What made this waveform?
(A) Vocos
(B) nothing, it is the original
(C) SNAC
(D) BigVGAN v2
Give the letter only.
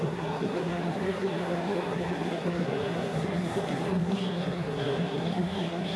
C